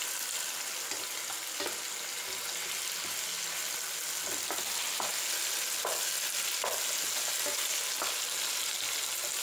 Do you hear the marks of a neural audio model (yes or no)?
no